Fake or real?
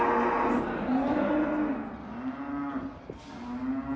real